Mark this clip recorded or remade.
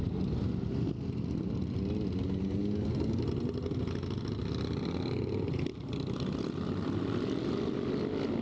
recorded